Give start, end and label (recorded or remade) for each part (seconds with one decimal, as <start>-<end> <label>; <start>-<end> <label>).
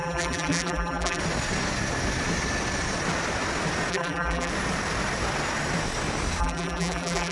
0.0-1.2 remade; 1.2-3.9 recorded; 3.9-4.5 remade; 4.5-6.4 recorded; 6.4-7.3 remade